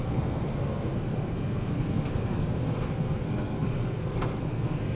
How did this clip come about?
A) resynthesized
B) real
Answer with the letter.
A